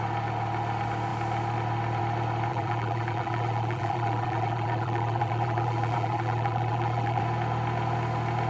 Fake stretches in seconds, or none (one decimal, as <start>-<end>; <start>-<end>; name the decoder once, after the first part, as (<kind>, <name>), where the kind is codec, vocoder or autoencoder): 2.5-7.2 (vocoder, BigVGAN v2)